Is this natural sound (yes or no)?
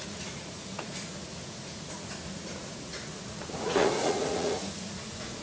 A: no